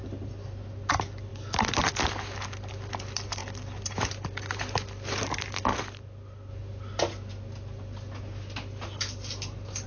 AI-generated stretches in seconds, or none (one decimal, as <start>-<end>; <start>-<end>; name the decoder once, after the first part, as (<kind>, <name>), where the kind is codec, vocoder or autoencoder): none